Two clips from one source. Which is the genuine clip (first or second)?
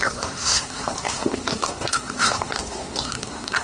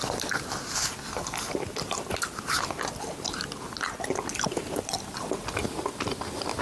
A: second